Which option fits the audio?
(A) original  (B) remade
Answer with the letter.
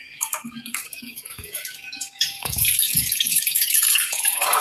B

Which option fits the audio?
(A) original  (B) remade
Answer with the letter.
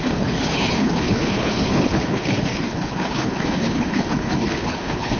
B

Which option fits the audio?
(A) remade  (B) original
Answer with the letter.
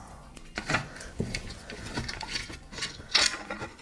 A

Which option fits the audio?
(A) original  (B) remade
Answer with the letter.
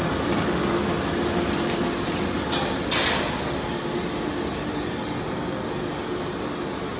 A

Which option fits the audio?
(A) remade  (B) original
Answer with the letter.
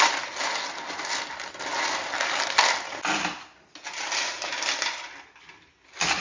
B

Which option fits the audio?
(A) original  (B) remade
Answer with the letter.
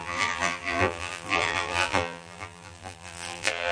B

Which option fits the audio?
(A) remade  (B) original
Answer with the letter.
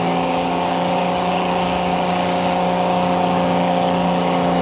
A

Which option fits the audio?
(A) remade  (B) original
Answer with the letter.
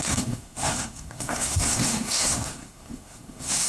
A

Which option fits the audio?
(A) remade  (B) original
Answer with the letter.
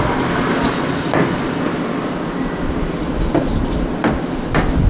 B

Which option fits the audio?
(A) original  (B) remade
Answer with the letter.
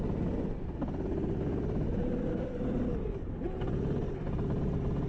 A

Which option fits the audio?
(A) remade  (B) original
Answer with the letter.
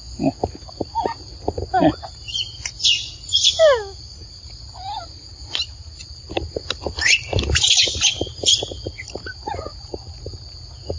B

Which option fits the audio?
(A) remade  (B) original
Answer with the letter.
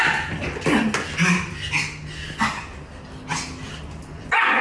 B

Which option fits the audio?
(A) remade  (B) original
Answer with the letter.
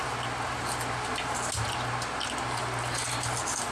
B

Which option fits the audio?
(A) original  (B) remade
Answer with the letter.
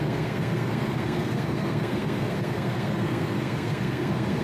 B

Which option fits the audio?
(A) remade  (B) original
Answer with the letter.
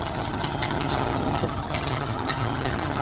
A